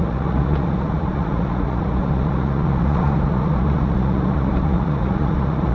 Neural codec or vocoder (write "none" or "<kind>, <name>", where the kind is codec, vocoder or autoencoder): vocoder, Vocos